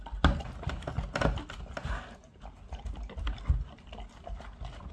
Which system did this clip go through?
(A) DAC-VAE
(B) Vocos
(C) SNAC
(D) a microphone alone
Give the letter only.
D